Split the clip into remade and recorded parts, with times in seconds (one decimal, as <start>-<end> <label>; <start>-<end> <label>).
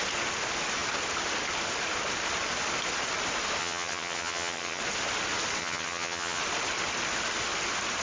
0.0-3.6 recorded; 3.6-4.8 remade; 4.8-5.6 recorded; 5.6-6.4 remade; 6.4-8.0 recorded